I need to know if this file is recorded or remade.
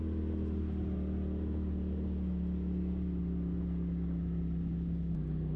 recorded